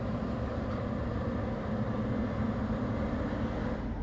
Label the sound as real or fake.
real